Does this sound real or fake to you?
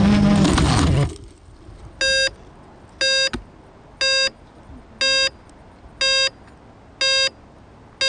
real